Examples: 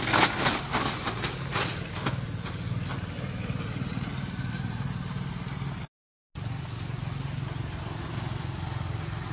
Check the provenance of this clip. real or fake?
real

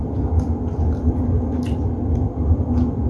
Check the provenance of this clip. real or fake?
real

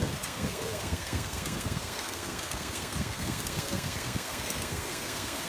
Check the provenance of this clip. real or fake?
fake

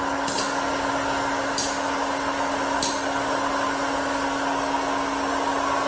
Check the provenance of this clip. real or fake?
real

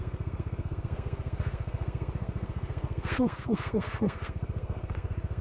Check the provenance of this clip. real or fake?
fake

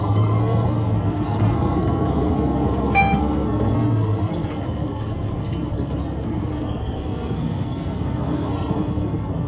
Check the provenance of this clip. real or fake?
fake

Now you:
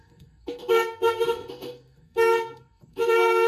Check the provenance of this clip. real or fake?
fake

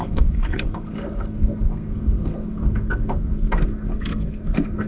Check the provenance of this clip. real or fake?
fake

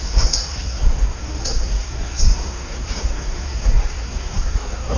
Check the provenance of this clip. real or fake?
fake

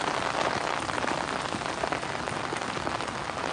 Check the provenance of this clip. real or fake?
real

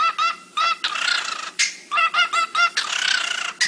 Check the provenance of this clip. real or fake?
real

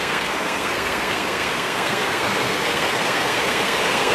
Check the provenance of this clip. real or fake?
fake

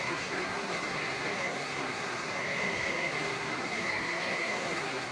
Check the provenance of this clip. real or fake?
fake